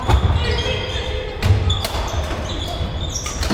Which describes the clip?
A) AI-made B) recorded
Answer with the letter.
B